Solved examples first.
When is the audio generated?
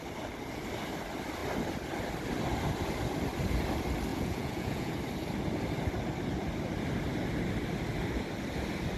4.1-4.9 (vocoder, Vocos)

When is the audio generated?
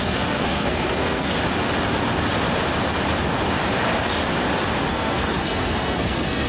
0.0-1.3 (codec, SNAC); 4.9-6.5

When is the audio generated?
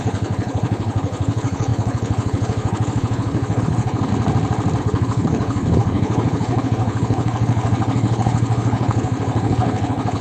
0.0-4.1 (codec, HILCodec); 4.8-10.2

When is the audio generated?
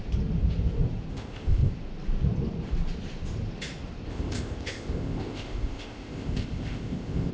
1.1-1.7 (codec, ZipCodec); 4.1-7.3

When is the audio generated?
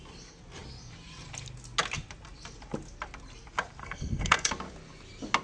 3.8-4.5 (codec, SNAC)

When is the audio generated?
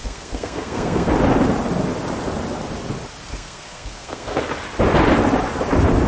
0.0-1.1 (codec, SNAC); 3.3-4.4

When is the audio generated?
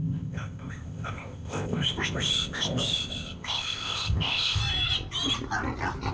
0.0-4.6 (codec, ZipCodec)